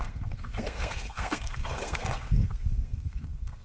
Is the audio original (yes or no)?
no